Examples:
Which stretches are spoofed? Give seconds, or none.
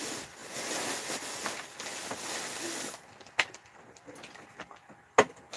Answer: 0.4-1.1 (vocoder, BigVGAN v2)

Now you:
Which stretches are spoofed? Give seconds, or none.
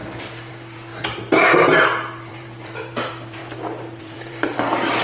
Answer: 0.5-0.9 (vocoder, BigVGAN v2); 2.3-3.4; 4.0-5.0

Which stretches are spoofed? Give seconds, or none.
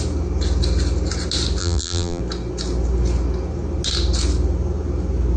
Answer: 1.6-2.2 (vocoder, BigVGAN v2)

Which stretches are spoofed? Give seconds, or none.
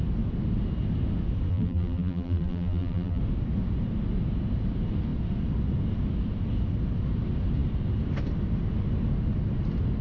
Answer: 1.5-3.2 (vocoder, BigVGAN v2)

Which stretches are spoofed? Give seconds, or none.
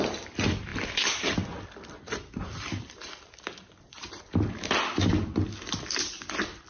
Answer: 0.7-4.2 (vocoder, BigVGAN v2)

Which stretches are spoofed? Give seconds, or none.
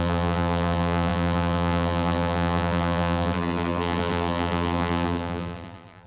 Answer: 0.0-6.1 (vocoder, BigVGAN v2)